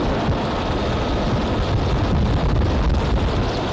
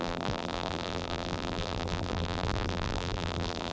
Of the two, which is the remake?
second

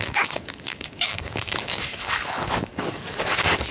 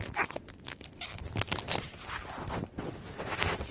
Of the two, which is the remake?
first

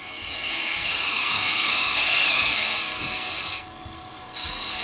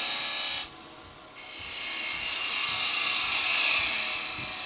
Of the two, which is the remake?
first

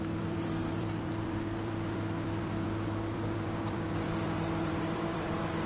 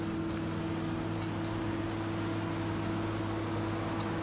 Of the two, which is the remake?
first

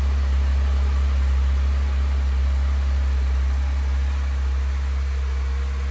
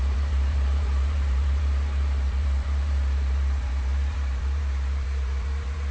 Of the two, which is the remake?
second